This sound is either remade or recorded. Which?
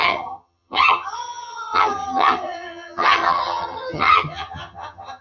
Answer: remade